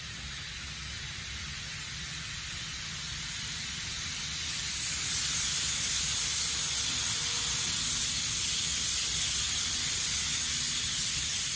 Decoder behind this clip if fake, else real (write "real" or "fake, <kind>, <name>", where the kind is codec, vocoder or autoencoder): real